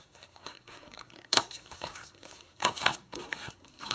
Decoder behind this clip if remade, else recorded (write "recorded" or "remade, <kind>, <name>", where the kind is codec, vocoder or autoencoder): remade, codec, SNAC